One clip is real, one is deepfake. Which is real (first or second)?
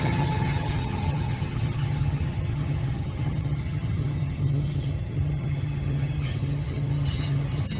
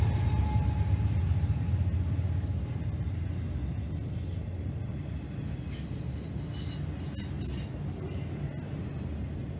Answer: second